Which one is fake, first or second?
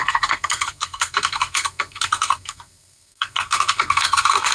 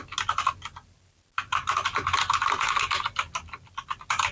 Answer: first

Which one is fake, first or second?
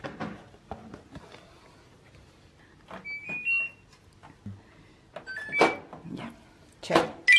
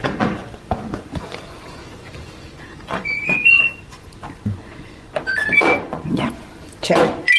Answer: second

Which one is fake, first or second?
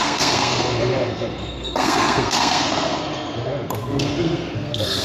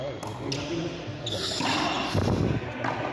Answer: first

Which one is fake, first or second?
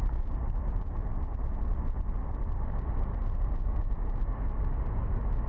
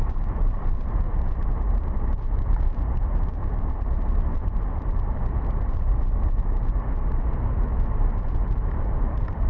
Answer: second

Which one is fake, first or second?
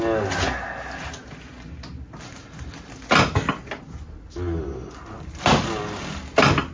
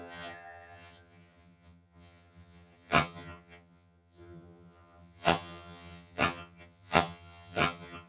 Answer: second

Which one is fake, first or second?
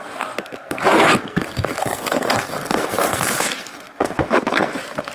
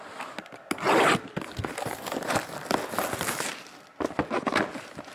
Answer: first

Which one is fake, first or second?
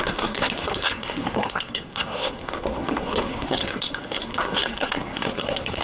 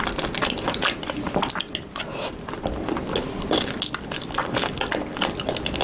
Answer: first